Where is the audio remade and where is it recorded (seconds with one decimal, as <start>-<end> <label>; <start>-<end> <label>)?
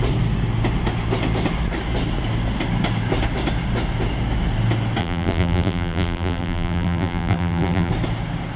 0.0-5.0 recorded; 5.0-7.9 remade; 7.9-8.6 recorded